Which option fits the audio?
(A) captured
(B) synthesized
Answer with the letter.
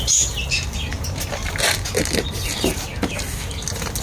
A